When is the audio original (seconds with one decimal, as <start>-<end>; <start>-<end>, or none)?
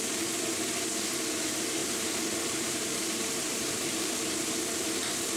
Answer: 0.0-1.8; 4.2-5.4